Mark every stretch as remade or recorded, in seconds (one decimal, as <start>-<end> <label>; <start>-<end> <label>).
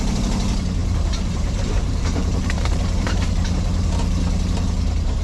0.0-0.8 recorded; 0.8-3.9 remade; 3.9-5.2 recorded